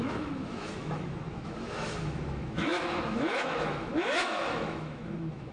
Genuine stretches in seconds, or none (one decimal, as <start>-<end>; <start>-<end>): none